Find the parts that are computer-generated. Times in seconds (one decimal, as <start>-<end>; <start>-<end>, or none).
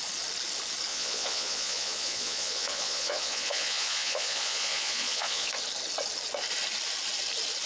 0.9-5.5